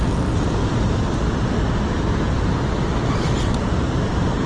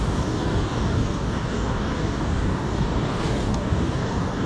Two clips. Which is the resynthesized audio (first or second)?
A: second